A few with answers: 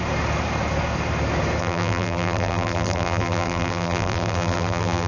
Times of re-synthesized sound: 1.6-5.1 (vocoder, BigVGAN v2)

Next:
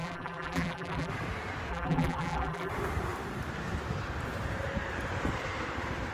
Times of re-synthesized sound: 0.0-1.1 (vocoder, BigVGAN v2); 1.7-2.7

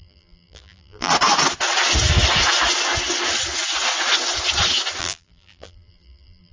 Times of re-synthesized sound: 0.0-1.1 (vocoder, BigVGAN v2); 5.0-6.5

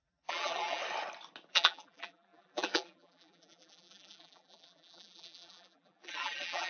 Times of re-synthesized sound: 0.0-0.8 (vocoder, BigVGAN v2); 1.5-6.7

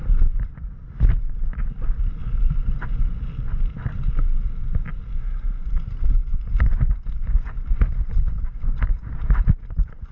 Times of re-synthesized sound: none

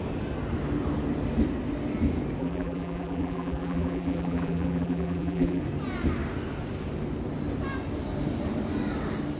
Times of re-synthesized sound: 2.4-5.6 (vocoder, BigVGAN v2)

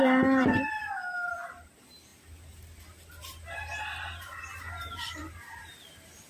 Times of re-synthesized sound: 4.5-5.2 (vocoder, BigVGAN v2)

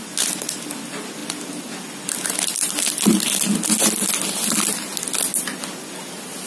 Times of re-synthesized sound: none